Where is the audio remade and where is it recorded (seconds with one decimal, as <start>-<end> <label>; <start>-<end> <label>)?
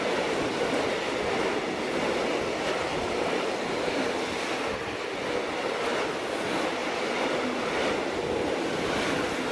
0.0-2.9 recorded; 2.9-4.4 remade; 4.4-6.8 recorded; 6.8-8.7 remade; 8.7-9.5 recorded